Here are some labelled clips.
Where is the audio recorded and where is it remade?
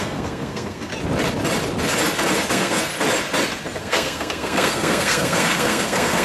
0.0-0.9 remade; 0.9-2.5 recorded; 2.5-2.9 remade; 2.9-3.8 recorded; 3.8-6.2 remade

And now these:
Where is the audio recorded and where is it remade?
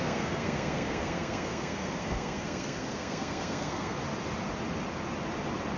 0.0-4.0 remade; 4.0-5.8 recorded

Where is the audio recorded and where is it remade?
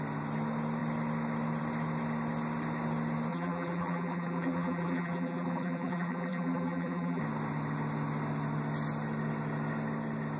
0.0-3.3 recorded; 3.3-7.2 remade; 7.2-10.4 recorded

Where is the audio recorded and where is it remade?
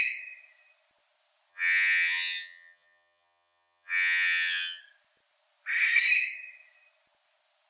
0.0-1.5 recorded; 1.5-4.8 remade; 4.8-7.7 recorded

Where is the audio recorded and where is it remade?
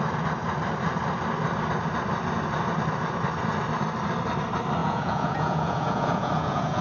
0.0-4.8 recorded; 4.8-6.8 remade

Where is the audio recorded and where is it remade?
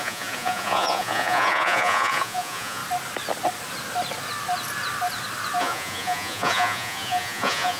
0.0-2.8 remade; 2.8-5.6 recorded; 5.6-7.8 remade